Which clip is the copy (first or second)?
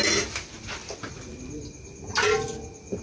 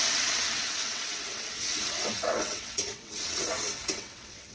second